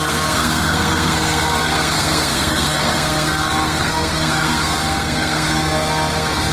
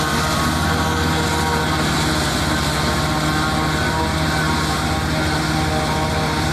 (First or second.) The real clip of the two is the second